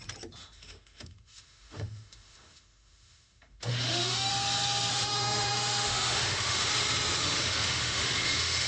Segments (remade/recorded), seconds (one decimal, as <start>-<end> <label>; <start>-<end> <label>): 0.0-0.4 recorded; 0.4-4.3 remade; 4.3-4.9 recorded; 4.9-6.7 remade; 6.7-7.2 recorded; 7.2-8.7 remade